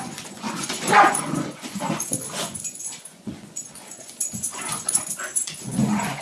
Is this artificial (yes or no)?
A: yes